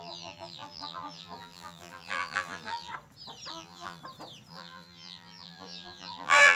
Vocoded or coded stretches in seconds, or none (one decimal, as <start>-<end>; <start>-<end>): 0.0-2.9; 3.5-4.0; 4.5-6.6